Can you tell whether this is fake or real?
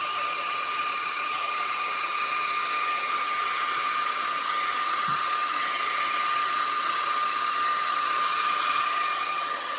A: fake